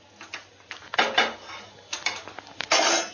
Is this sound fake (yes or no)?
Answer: no